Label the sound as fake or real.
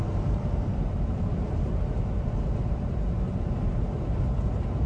real